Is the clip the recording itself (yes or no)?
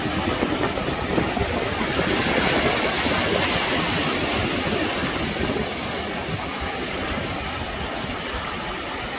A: yes